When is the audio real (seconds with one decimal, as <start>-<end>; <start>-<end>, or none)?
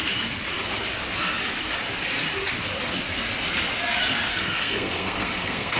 0.0-4.3